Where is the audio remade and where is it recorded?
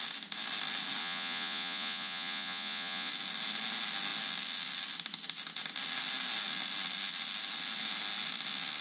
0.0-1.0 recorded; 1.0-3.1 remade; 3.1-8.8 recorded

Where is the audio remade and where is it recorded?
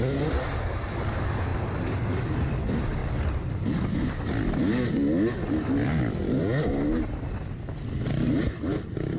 0.0-9.2 recorded